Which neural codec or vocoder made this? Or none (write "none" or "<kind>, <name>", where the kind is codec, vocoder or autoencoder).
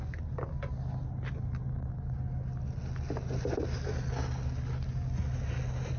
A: none